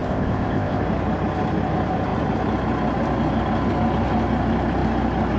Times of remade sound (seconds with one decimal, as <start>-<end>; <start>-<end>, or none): 0.0-0.8